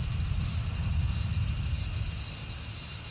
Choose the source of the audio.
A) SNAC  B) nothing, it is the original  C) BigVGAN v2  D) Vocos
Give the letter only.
B